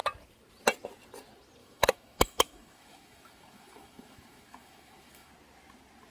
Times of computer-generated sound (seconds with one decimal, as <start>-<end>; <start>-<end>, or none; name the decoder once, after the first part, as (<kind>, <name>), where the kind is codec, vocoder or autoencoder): 1.6-5.3 (autoencoder, DAC-VAE)